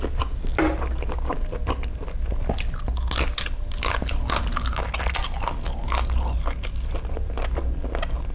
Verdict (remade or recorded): recorded